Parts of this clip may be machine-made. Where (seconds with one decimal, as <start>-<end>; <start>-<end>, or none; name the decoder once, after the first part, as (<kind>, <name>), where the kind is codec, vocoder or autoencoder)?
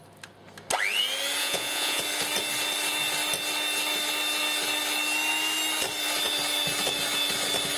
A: 1.4-2.0 (vocoder, Vocos)